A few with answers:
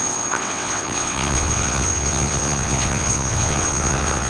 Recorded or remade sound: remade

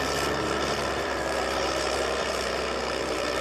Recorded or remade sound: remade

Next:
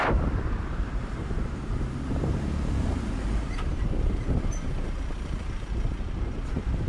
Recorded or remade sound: remade